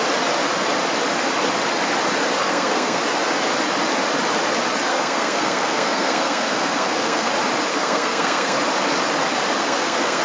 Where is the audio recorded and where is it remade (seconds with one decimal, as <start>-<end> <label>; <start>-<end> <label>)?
0.0-2.4 recorded; 2.4-3.0 remade; 3.0-4.9 recorded; 4.9-7.3 remade; 7.3-7.7 recorded; 7.7-8.6 remade; 8.6-9.6 recorded; 9.6-10.2 remade